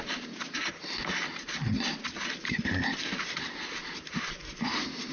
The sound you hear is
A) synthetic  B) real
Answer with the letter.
B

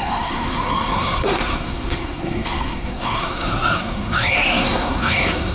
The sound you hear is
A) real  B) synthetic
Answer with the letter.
B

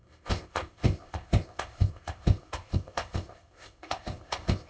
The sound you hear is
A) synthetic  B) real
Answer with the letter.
A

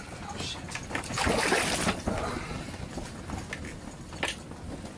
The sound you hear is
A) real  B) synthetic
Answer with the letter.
A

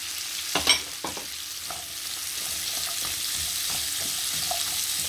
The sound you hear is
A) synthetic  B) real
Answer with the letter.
B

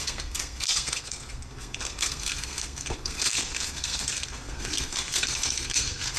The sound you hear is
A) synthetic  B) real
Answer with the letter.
A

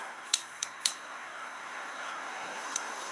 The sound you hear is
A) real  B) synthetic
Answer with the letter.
B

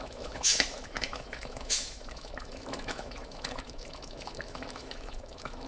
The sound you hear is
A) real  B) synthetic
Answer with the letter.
B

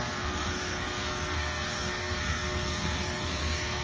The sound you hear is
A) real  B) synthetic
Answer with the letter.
B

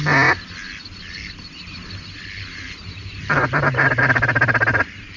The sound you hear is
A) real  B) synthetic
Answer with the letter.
A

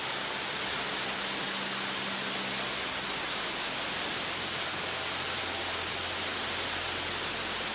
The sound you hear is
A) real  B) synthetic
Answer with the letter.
A